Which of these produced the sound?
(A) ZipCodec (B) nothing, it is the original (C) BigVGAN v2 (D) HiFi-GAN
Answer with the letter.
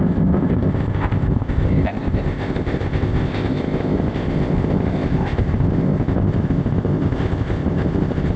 A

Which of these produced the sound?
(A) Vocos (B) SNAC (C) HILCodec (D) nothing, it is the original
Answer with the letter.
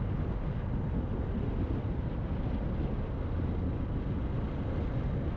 D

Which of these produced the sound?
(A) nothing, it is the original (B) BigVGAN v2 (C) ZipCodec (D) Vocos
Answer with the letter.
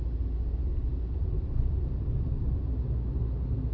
A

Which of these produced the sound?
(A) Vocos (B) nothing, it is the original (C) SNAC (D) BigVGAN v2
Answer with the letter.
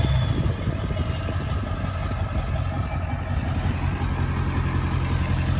B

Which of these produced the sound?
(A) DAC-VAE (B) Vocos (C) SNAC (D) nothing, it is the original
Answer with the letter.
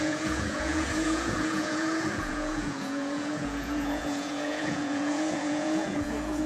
B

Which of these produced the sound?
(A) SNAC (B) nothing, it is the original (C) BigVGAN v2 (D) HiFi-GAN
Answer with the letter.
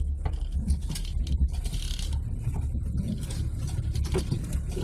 B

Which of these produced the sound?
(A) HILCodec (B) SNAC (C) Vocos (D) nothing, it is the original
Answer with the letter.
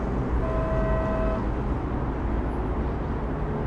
D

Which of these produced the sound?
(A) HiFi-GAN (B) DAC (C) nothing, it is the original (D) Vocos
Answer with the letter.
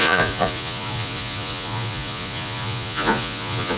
D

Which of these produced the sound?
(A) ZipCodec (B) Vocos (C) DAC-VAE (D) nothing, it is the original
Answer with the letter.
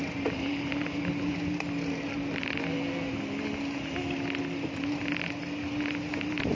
D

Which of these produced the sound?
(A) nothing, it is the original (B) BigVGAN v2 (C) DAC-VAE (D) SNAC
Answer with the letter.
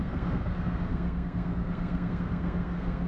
D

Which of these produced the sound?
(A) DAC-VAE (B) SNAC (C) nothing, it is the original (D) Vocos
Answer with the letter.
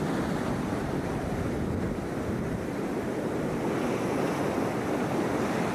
C